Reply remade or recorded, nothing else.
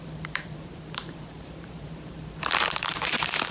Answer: remade